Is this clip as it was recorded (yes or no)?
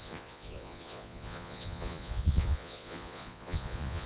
no